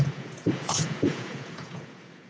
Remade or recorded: remade